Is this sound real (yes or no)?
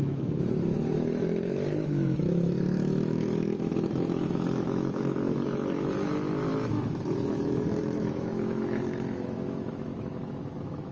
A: no